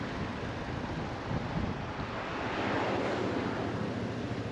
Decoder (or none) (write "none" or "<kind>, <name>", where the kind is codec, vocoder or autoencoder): none